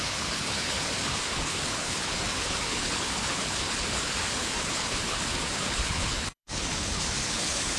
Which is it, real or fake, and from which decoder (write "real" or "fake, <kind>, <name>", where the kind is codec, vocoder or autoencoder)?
fake, codec, HILCodec